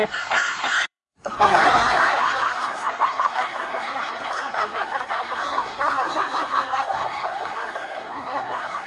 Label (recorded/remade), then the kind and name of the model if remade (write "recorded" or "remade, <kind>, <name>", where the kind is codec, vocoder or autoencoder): remade, codec, SNAC